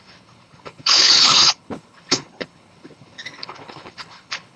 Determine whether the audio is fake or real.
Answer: fake